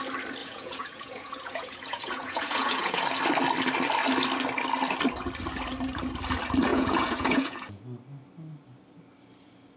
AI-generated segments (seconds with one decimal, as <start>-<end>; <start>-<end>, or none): 0.4-3.0; 6.7-7.8